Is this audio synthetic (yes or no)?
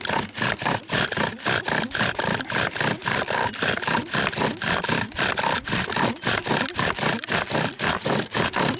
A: no